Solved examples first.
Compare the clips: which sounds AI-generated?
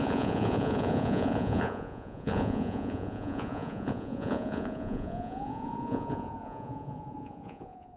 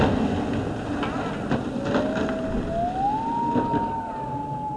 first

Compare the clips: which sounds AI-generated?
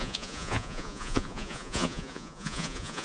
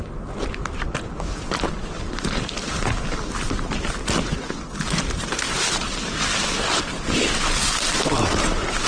first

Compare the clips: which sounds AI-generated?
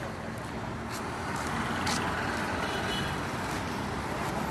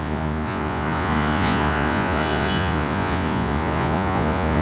second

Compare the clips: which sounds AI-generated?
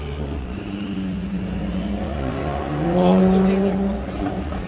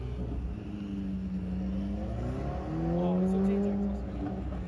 first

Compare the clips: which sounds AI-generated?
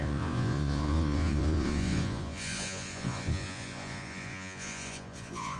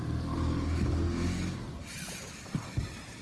first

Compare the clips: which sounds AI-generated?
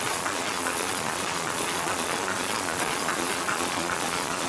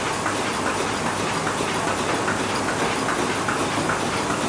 first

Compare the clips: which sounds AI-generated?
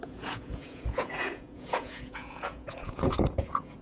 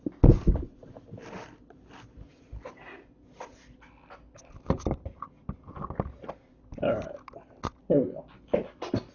first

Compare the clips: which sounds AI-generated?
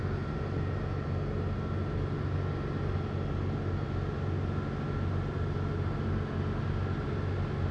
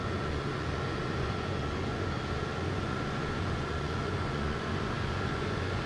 second